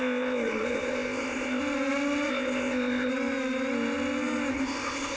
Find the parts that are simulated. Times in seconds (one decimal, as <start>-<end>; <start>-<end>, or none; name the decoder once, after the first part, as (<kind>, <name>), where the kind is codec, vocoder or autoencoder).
0.0-1.6 (codec, ZipCodec); 2.3-3.1; 4.5-5.2